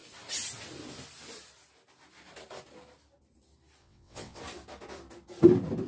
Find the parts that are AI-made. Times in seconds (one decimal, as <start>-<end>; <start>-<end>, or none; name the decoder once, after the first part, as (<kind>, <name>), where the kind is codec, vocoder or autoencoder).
3.8-4.4 (vocoder, WaveNeXt)